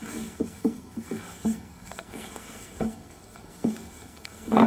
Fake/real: fake